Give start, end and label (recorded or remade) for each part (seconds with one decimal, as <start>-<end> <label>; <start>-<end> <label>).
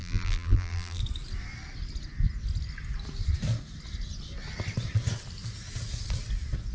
0.0-1.0 remade; 1.0-6.7 recorded